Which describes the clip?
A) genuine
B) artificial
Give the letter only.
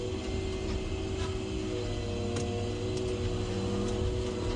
A